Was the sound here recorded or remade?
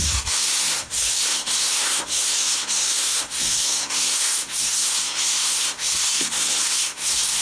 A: remade